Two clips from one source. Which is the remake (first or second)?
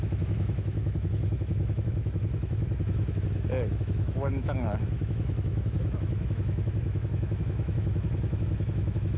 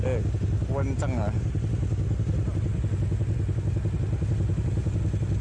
first